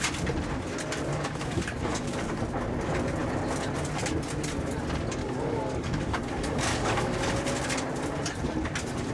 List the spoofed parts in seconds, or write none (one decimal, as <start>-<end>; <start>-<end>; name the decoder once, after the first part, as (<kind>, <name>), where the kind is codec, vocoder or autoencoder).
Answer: 1.1-2.4 (codec, DAC); 5.2-7.3

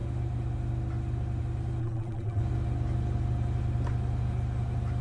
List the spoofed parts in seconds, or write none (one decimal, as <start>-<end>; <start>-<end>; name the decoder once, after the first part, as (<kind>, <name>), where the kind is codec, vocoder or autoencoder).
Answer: 1.8-2.4 (vocoder, BigVGAN v2)

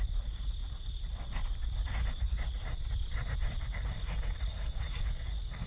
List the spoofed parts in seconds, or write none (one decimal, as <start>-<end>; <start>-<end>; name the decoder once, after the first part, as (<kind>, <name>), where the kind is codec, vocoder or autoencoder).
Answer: 4.5-5.3 (codec, DAC)

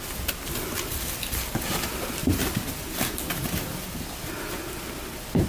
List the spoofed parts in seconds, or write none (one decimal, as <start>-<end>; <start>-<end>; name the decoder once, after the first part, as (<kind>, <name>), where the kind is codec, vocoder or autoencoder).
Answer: none

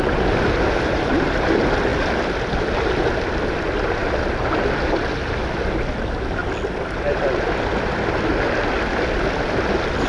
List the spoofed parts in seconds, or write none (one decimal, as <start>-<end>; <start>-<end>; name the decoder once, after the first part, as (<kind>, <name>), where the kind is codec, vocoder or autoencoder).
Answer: none

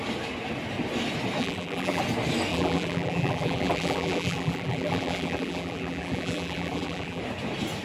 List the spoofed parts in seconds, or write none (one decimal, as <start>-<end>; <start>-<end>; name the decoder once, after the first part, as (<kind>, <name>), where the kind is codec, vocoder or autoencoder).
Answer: 1.4-2.0 (vocoder, BigVGAN v2); 2.5-7.2

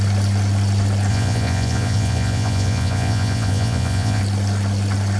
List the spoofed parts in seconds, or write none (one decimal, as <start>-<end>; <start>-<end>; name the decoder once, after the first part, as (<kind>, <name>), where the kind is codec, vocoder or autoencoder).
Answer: 1.1-4.2 (vocoder, Vocos)